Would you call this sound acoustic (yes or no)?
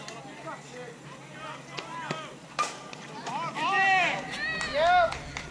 yes